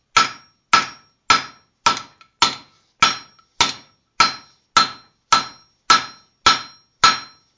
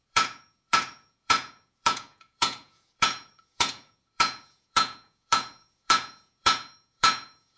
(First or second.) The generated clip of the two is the second